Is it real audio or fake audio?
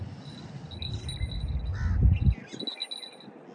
real